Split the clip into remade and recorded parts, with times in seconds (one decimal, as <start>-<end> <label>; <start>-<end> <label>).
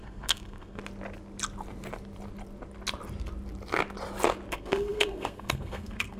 0.0-0.8 remade; 0.8-4.5 recorded; 4.5-6.2 remade